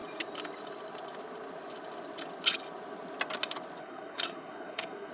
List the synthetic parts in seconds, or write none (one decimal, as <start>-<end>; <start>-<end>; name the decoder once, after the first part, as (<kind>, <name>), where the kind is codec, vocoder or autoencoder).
3.8-5.1 (codec, SNAC)